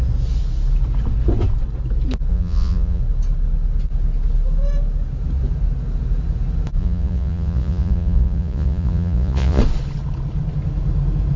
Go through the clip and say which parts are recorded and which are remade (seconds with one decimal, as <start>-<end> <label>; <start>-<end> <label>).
0.0-2.3 recorded; 2.3-3.0 remade; 3.0-6.8 recorded; 6.8-9.6 remade; 9.6-11.4 recorded